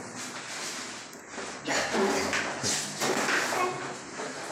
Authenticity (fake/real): real